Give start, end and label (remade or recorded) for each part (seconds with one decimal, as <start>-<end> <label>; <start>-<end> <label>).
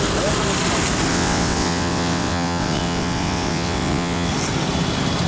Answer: 0.0-1.1 recorded; 1.1-4.3 remade; 4.3-5.3 recorded